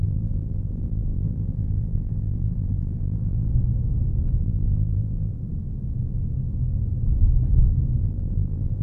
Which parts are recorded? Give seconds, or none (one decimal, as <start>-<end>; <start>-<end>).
3.5-4.4; 5.3-8.0